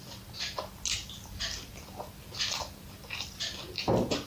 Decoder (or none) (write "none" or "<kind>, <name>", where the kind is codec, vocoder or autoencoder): none